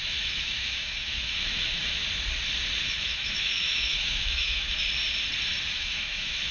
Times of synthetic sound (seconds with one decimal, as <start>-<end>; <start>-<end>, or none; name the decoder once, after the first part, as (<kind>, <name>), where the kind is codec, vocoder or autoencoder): 0.0-2.0 (autoencoder, DAC-VAE); 2.8-4.8; 5.7-6.5